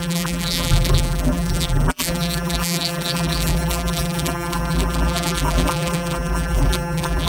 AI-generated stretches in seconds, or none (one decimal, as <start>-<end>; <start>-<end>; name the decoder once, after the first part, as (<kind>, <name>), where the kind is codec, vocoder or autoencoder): 0.0-7.3 (vocoder, BigVGAN v2)